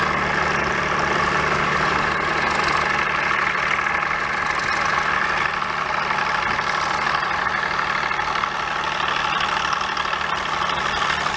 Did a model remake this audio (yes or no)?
no